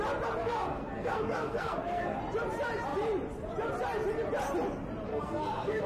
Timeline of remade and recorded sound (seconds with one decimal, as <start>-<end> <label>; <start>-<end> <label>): 0.0-0.4 recorded; 0.4-2.2 remade; 2.2-5.1 recorded; 5.1-5.9 remade